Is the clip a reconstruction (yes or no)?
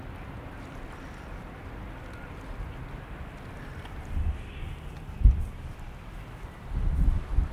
no